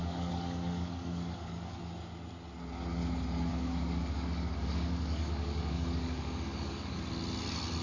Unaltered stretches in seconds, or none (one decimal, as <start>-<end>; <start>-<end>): 1.8-3.5; 7.0-7.8